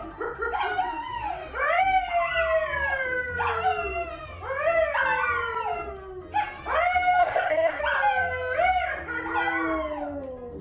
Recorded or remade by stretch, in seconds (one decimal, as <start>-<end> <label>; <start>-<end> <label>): 0.0-7.2 recorded; 7.2-7.8 remade; 7.8-10.6 recorded